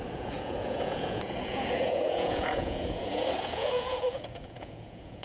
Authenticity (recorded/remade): remade